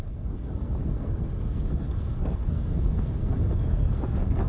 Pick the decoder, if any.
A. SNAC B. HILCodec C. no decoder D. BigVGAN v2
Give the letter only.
A